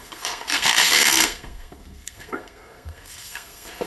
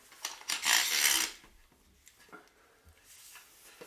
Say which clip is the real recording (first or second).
second